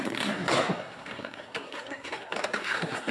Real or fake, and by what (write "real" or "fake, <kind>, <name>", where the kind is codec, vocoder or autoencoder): fake, codec, SNAC